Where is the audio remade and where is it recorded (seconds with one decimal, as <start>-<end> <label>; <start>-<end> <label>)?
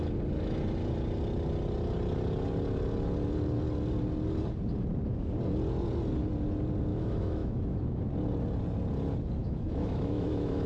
0.0-6.9 recorded; 6.9-8.0 remade; 8.0-9.4 recorded; 9.4-10.7 remade